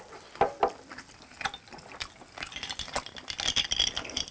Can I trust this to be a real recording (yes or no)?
yes